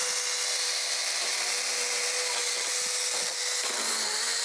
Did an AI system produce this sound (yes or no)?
no